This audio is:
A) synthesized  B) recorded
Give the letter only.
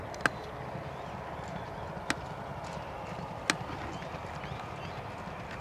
B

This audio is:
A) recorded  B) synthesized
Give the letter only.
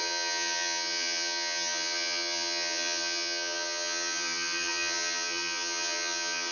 B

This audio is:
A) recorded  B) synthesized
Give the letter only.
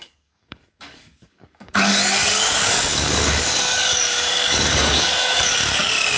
B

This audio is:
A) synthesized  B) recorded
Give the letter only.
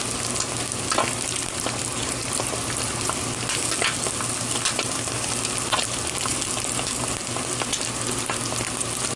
B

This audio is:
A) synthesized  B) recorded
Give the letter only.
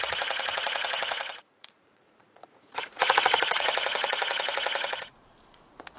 A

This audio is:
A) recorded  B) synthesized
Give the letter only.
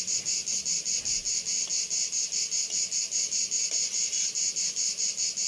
A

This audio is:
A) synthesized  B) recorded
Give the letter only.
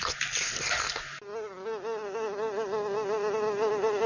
B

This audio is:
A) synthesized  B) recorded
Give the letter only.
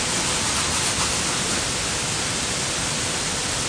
B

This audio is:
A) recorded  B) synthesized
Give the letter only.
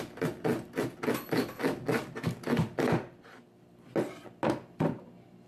A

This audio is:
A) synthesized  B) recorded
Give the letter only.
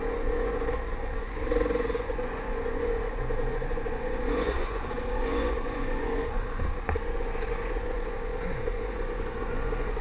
A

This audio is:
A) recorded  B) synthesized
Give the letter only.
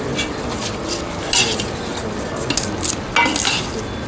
A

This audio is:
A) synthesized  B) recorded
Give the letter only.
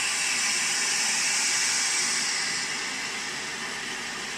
B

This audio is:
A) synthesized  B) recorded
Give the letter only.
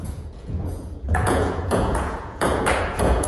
A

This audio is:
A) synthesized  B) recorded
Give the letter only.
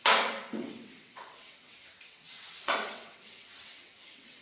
A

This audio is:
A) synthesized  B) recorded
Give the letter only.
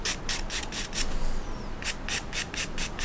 B